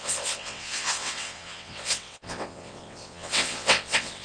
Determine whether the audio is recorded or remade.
remade